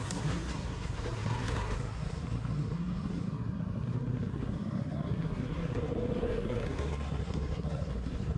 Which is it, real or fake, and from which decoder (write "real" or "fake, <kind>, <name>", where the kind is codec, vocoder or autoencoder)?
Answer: fake, codec, SNAC